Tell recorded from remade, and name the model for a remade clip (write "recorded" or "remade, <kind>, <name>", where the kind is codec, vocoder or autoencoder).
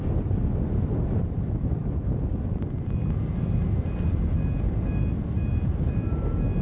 recorded